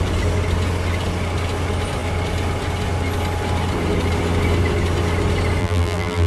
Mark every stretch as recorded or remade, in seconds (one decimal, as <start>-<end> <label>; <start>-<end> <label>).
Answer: 0.0-5.6 recorded; 5.6-6.3 remade

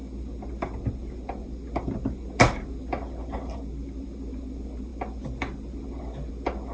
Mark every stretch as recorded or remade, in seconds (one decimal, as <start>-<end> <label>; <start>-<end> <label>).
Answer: 0.0-6.7 recorded

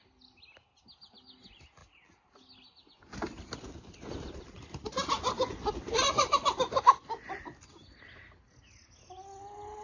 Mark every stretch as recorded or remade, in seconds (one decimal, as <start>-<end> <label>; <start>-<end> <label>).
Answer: 0.0-9.8 recorded

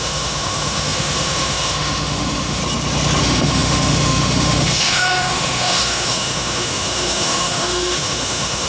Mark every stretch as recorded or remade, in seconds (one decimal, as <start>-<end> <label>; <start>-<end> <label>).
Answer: 0.0-2.6 remade; 2.6-3.2 recorded; 3.2-8.7 remade